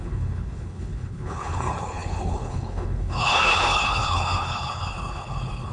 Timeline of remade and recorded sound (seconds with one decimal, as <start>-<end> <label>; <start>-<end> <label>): 0.0-5.7 remade

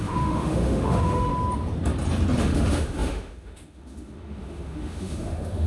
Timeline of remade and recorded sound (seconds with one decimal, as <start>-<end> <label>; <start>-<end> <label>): 0.0-1.3 remade; 1.3-2.4 recorded; 2.4-5.7 remade

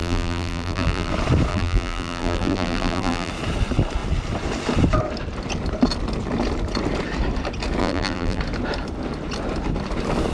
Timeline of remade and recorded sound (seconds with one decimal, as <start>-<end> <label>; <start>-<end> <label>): 0.0-1.1 remade; 1.1-1.5 recorded; 1.5-3.3 remade; 3.3-7.8 recorded; 7.8-8.4 remade; 8.4-10.3 recorded

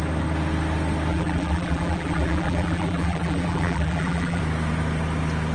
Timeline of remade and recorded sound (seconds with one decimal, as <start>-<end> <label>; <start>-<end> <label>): 0.0-1.1 recorded; 1.1-4.4 remade; 4.4-5.5 recorded